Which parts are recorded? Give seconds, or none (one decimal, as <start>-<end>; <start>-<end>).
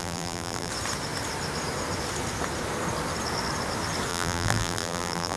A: 0.7-4.1